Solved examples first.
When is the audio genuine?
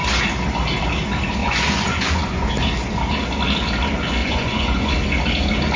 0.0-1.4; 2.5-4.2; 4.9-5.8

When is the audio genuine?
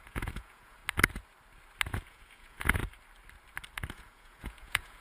0.8-1.9; 2.8-3.9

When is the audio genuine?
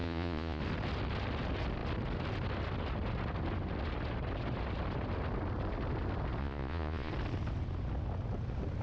0.6-6.4; 7.1-8.8